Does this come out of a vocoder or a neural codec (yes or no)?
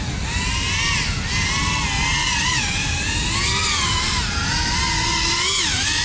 no